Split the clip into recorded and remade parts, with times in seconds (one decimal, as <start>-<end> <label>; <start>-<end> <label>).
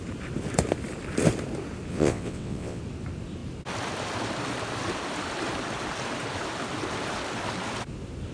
0.0-1.9 recorded; 1.9-2.8 remade; 2.8-8.3 recorded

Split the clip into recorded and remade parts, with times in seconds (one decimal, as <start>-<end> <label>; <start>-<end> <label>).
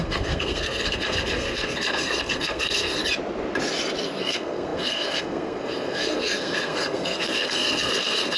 0.0-3.0 remade; 3.0-4.2 recorded; 4.2-8.4 remade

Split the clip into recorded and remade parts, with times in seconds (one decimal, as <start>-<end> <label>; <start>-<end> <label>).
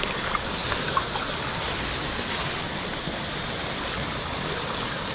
0.0-5.1 recorded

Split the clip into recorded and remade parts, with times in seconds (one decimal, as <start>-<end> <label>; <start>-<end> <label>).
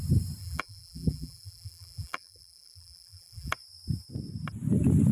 0.0-0.4 recorded; 0.4-3.5 remade; 3.5-5.1 recorded